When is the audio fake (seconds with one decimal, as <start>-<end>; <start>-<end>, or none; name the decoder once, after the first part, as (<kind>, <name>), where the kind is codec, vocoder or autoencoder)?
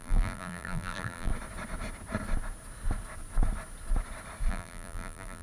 0.0-1.3 (vocoder, BigVGAN v2); 4.5-5.4